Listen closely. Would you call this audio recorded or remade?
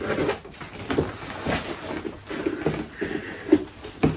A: recorded